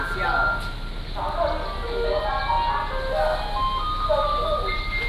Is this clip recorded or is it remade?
recorded